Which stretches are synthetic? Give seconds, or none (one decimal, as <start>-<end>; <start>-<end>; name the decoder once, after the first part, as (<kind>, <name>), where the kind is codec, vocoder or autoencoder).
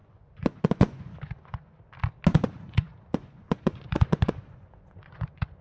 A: 0.0-1.8 (vocoder, Vocos); 2.3-5.6